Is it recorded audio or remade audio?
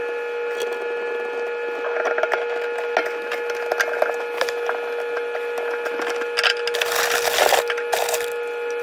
recorded